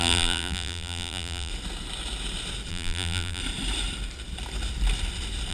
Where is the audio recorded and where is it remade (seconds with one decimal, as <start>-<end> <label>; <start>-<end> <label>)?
0.0-1.5 remade; 1.5-2.7 recorded; 2.7-3.4 remade; 3.4-5.5 recorded